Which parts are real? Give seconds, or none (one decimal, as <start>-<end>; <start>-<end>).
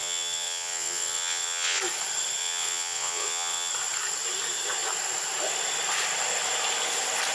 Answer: 1.8-2.4; 3.7-7.3